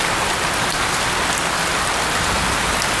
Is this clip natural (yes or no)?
yes